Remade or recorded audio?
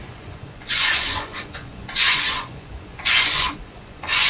remade